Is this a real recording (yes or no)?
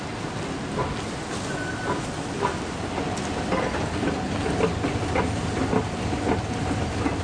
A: yes